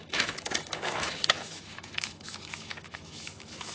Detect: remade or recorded remade